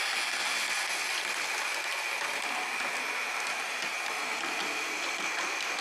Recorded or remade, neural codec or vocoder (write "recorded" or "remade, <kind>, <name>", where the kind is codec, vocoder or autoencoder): recorded